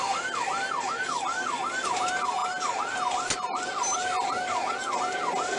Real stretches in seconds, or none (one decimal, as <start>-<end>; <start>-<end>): 0.0-5.6